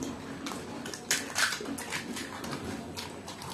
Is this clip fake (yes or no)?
no